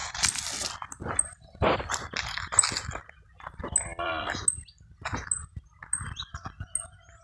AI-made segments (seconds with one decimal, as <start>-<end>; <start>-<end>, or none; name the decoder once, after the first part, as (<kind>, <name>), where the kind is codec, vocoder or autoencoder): none